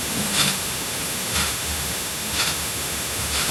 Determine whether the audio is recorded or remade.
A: remade